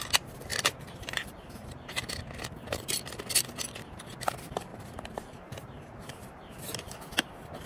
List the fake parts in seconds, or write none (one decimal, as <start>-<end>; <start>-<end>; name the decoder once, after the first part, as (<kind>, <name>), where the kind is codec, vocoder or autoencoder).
0.5-3.0 (vocoder, BigVGAN v2); 4.7-7.1